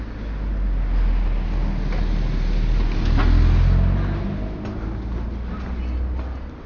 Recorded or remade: recorded